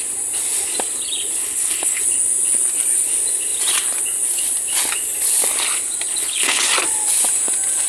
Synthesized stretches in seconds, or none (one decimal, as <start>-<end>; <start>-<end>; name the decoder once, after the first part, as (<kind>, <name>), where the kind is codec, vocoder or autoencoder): 1.4-2.0 (codec, HILCodec); 6.1-6.6